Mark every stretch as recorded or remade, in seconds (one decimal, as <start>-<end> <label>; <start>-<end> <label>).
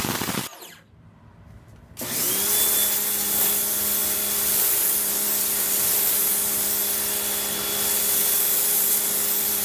0.0-9.6 recorded